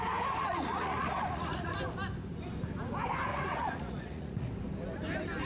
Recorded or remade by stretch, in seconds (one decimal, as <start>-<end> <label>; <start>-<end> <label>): 0.0-0.4 recorded; 0.4-1.7 remade; 1.7-3.3 recorded; 3.3-4.5 remade; 4.5-5.5 recorded